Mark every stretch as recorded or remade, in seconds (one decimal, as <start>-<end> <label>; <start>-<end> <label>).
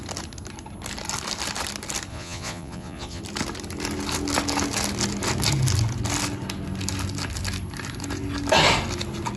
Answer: 0.0-2.1 recorded; 2.1-3.2 remade; 3.2-9.4 recorded